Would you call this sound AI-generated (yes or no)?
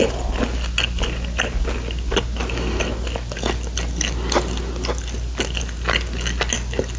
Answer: no